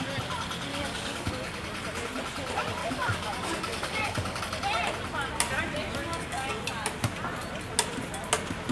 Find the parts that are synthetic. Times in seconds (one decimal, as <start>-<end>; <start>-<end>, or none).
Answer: 0.7-1.3; 2.8-4.4; 6.0-6.5